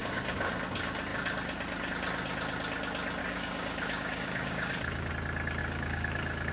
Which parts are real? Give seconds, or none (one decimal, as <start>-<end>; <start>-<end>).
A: 0.5-3.2; 5.1-5.6